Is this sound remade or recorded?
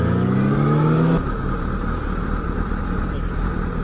recorded